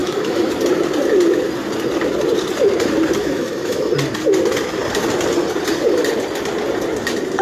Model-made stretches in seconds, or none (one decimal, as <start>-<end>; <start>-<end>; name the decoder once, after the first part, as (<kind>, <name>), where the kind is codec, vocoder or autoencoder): 0.0-0.5 (autoencoder, DAC-VAE); 3.2-3.9